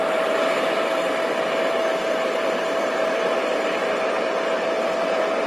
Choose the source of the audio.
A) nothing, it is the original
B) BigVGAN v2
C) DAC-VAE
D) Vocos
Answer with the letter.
B